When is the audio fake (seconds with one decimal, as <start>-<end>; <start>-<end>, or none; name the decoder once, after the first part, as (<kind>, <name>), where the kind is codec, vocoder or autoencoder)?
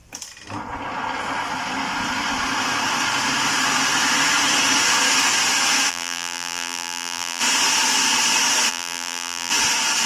5.9-7.4 (vocoder, BigVGAN v2); 8.7-9.5